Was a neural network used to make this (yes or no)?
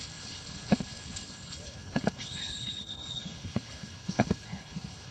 yes